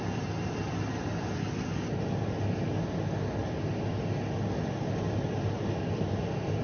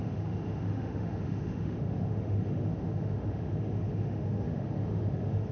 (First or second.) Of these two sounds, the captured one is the first